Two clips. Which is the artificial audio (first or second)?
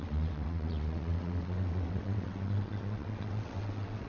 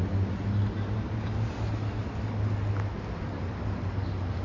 first